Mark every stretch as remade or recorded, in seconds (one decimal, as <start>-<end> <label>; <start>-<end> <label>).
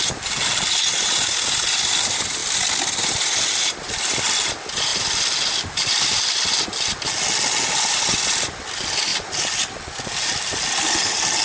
0.0-11.4 recorded